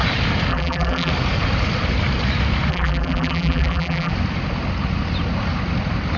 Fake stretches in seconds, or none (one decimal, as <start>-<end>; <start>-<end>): 0.5-1.1; 2.7-4.1